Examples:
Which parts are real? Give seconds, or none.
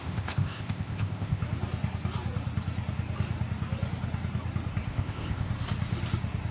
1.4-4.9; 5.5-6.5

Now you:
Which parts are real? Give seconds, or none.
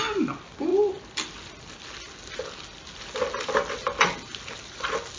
0.0-5.2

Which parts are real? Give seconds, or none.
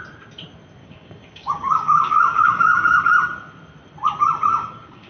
0.0-0.8; 3.0-4.5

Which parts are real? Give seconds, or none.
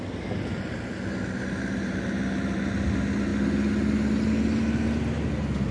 0.0-5.7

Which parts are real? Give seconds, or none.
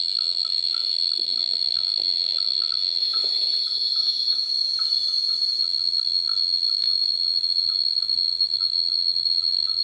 3.0-5.6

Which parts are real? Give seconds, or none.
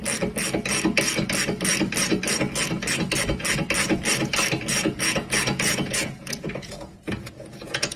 0.0-4.7